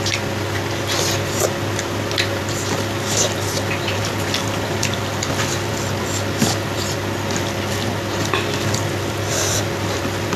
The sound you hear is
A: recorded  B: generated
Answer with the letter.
A